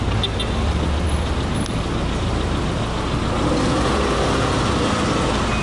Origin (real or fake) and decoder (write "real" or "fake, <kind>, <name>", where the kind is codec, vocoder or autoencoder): real